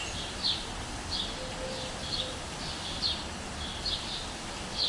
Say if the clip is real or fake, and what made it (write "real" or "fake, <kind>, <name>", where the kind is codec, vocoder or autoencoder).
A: real